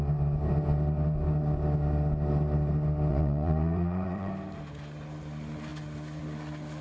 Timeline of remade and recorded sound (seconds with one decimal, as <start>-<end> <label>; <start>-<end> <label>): 0.0-3.1 recorded; 3.1-4.3 remade; 4.3-6.8 recorded